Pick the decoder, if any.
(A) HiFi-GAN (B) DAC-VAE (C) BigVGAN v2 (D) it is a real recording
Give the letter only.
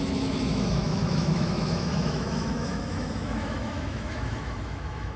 B